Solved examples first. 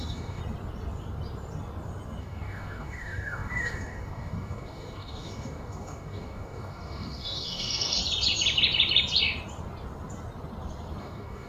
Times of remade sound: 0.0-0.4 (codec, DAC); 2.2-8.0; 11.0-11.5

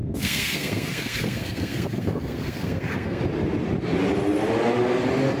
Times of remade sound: 0.0-3.2 (codec, SNAC)

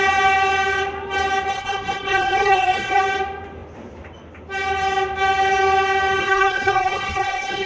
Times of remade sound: 1.5-3.0 (codec, SNAC); 6.2-7.7

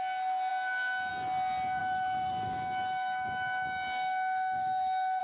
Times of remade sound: 1.8-5.2 (autoencoder, DAC-VAE)